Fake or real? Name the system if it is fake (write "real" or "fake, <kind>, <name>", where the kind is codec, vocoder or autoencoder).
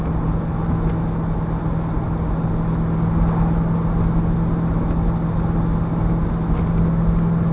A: real